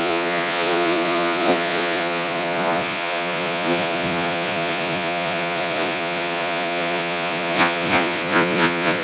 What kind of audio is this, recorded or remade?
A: remade